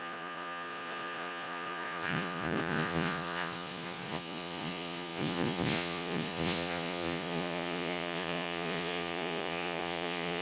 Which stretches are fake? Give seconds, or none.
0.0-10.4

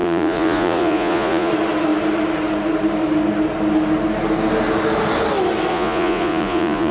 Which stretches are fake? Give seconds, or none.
0.0-1.5; 5.7-6.9

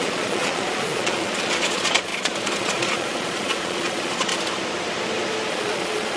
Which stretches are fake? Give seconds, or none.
0.0-4.3; 5.5-6.2

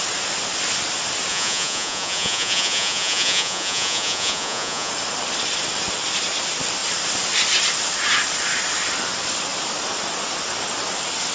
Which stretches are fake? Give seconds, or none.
1.3-4.9

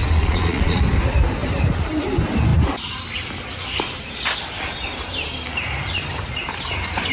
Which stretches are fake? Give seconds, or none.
0.0-0.8

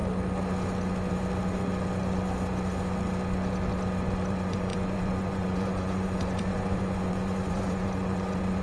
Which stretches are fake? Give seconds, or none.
4.3-8.6

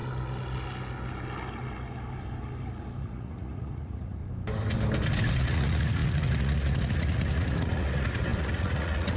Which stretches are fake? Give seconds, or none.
3.0-4.2; 5.4-9.2

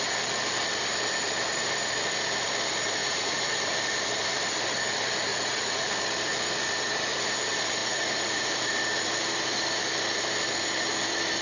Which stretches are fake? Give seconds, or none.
3.0-3.5; 5.3-5.9; 7.8-8.5